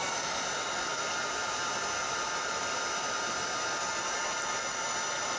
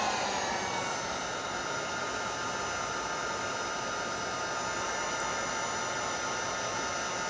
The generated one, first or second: first